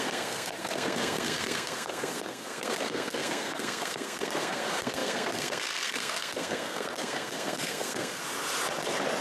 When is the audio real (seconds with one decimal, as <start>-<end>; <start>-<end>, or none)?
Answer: 8.2-9.2